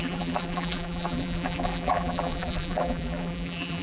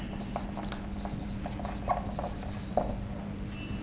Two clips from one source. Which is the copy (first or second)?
first